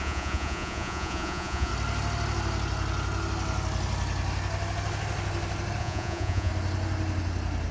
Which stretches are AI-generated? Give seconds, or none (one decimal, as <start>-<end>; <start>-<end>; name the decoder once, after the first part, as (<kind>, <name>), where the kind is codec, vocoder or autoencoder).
0.0-1.7 (vocoder, Vocos); 5.8-6.5